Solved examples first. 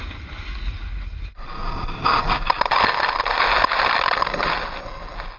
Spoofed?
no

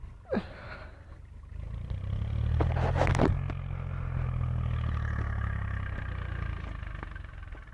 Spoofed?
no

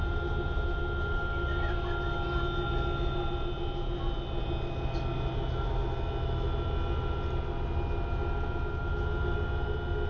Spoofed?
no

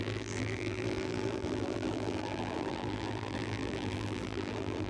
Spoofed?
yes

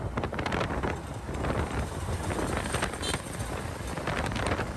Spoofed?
yes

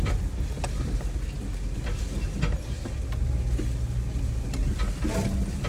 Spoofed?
no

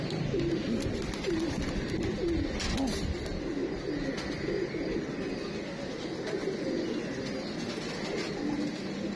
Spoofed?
no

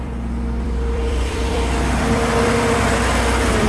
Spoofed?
yes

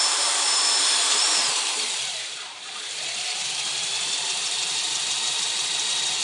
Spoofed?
yes